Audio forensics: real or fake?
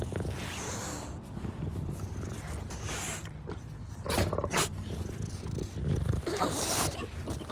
fake